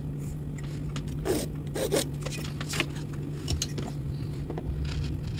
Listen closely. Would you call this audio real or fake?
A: real